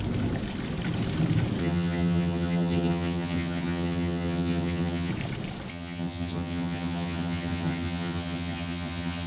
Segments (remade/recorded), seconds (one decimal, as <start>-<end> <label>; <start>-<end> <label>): 0.0-1.6 recorded; 1.6-5.1 remade; 5.1-5.7 recorded; 5.7-9.3 remade